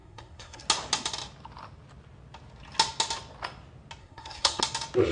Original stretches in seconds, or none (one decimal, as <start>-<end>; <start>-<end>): 0.6-4.0; 4.6-5.1